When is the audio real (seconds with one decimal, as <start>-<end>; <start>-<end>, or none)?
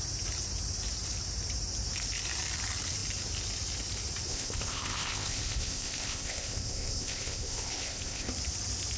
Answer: 0.0-4.3; 8.3-9.0